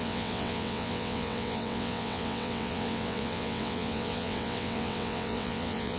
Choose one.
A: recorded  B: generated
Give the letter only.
B